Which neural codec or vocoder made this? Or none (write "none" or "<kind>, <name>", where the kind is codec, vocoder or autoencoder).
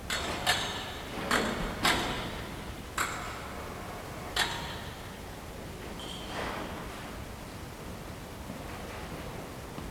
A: none